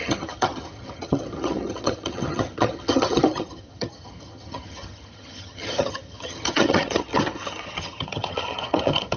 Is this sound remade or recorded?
remade